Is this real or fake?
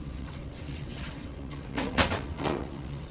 fake